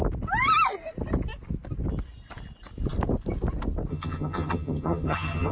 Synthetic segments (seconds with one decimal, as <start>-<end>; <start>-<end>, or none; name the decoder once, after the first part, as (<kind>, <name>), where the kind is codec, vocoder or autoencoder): 3.9-5.5 (vocoder, HiFi-GAN)